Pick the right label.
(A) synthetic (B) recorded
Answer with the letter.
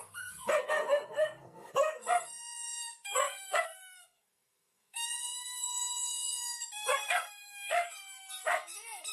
A